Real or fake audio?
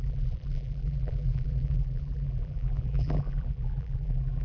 fake